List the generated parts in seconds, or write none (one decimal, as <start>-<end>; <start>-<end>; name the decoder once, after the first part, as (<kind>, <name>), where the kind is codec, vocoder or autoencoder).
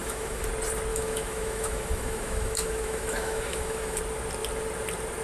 0.0-0.5 (autoencoder, DAC-VAE); 0.9-4.0